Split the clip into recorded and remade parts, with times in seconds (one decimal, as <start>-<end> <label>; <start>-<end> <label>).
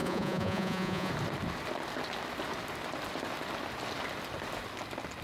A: 0.0-1.1 remade; 1.1-5.2 recorded